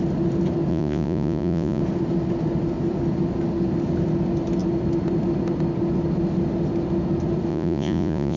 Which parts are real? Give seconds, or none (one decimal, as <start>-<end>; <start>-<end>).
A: 0.0-0.7; 1.8-7.5